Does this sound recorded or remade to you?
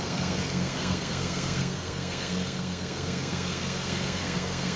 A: remade